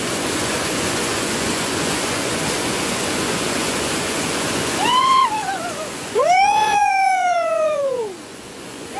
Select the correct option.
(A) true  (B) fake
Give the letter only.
B